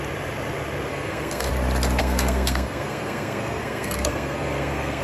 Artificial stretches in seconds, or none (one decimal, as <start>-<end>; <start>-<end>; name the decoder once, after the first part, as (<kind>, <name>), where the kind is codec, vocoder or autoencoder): 0.9-1.5 (codec, SNAC); 2.0-5.0